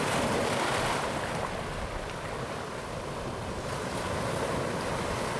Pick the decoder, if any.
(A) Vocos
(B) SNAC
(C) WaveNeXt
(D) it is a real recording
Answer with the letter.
D